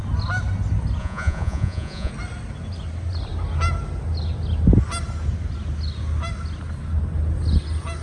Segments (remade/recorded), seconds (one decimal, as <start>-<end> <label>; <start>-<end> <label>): 0.0-1.0 recorded; 1.0-2.1 remade; 2.1-8.0 recorded